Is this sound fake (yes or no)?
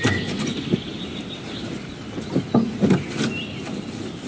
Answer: no